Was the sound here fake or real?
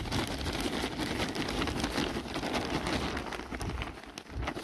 real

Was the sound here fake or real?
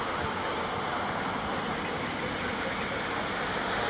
real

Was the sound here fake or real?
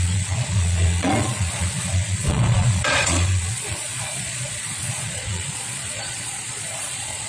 fake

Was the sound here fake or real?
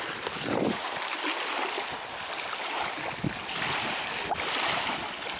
real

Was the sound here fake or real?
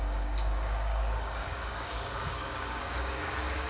fake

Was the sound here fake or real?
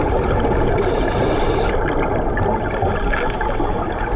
real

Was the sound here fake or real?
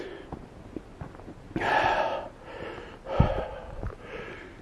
real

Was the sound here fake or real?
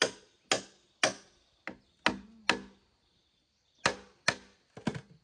real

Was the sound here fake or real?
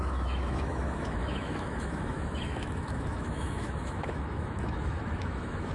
fake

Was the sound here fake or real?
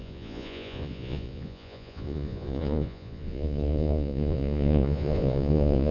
fake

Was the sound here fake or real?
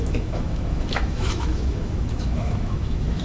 fake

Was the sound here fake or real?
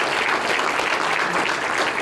real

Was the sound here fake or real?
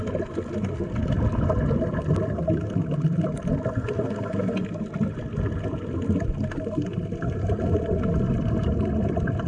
real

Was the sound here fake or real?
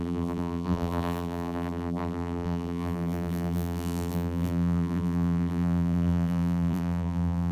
fake